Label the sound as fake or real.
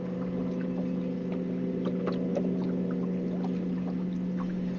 real